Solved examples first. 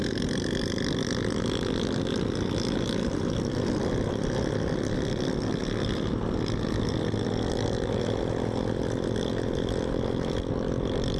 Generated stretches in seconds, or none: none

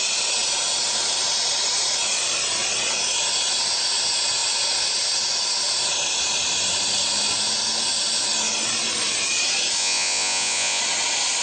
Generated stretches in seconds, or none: 9.8-10.8 (vocoder, Vocos)

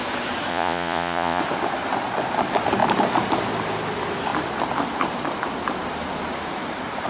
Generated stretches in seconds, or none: 0.5-1.4 (vocoder, Vocos)

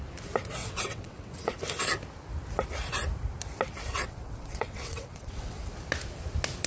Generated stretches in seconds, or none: 0.6-1.6 (vocoder, WaveNeXt); 3.9-5.7

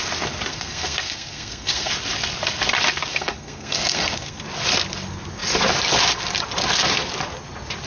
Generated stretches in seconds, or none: 0.5-1.9 (codec, SNAC); 3.1-4.4